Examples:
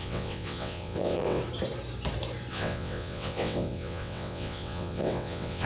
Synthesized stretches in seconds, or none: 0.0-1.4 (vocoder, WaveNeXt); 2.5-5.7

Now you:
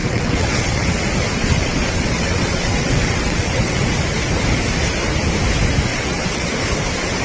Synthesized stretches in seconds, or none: 0.0-1.0 (vocoder, WaveNeXt); 1.4-4.0; 5.9-6.5

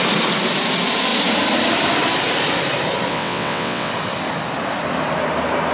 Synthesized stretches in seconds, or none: 3.1-3.9 (vocoder, WaveNeXt)

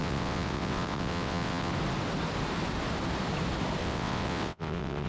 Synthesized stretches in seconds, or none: 0.0-1.7 (vocoder, WaveNeXt); 3.8-5.1

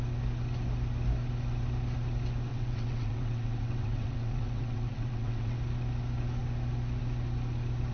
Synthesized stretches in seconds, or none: 2.5-5.6 (vocoder, WaveNeXt)